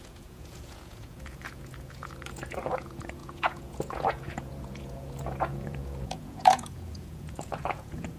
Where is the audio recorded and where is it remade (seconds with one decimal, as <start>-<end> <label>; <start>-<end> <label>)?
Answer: 0.0-8.2 remade